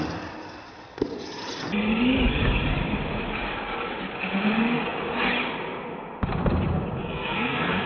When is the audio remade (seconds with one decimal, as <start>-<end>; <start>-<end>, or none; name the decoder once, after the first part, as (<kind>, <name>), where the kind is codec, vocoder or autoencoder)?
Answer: 7.0-7.9 (codec, SNAC)